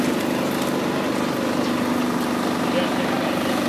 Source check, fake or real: real